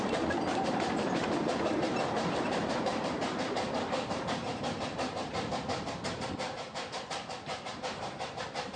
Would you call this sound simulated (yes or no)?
yes